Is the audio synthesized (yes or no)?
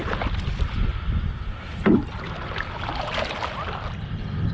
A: no